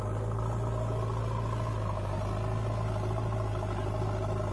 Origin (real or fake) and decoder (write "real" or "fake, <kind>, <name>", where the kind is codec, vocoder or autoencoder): real